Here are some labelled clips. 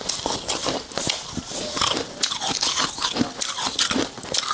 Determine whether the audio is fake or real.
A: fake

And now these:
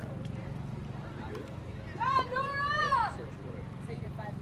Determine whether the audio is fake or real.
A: fake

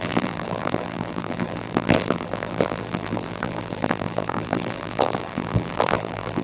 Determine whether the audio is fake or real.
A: fake